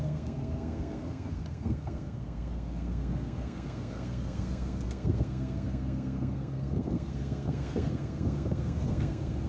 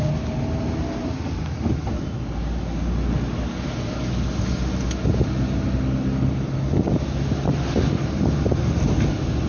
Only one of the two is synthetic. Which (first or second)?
first